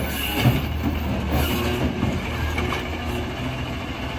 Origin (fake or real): real